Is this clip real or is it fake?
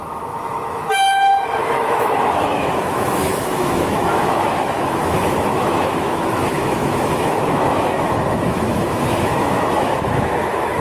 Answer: fake